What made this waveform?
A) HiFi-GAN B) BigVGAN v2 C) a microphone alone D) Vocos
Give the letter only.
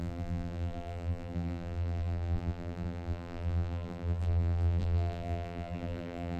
B